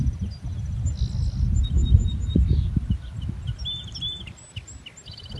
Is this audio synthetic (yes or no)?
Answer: no